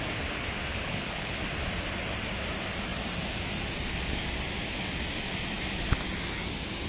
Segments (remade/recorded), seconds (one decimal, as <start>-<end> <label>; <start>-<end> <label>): 0.0-0.7 recorded; 0.7-1.4 remade; 1.4-6.9 recorded